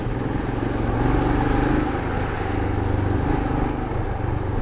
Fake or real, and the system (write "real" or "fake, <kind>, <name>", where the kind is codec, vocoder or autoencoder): real